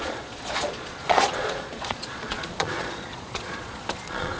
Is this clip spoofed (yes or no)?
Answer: yes